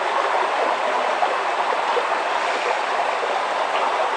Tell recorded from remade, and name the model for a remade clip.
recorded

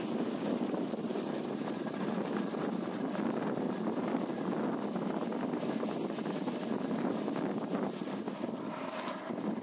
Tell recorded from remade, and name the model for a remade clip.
recorded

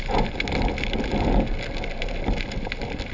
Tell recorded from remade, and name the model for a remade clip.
recorded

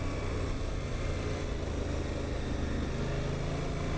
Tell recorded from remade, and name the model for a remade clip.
recorded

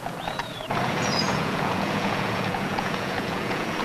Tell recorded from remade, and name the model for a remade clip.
remade, vocoder, Vocos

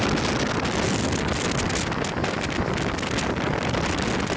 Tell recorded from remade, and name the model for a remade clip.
recorded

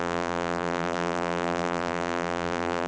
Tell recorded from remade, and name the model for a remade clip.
remade, vocoder, BigVGAN v2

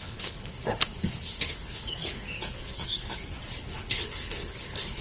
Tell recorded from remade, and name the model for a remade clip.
remade, codec, HILCodec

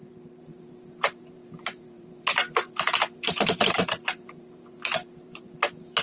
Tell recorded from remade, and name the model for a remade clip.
remade, vocoder, BigVGAN v2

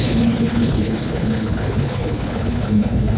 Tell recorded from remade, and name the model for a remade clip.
remade, codec, HILCodec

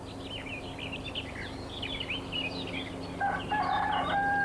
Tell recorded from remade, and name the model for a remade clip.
recorded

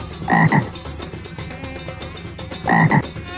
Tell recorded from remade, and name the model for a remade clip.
recorded